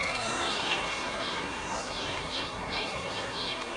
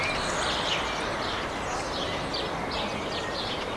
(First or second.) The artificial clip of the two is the first